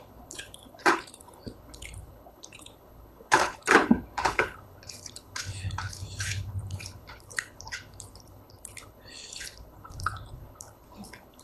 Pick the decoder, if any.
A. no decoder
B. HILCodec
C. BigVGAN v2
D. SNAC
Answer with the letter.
B